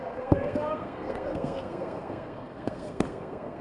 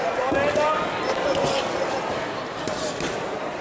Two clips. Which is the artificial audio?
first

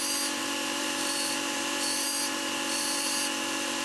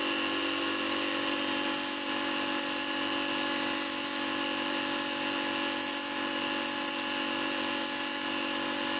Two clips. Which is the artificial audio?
first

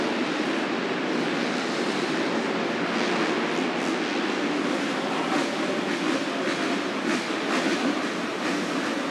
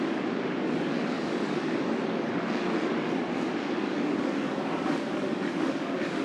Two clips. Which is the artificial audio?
second